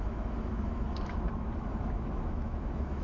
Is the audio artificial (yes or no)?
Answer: yes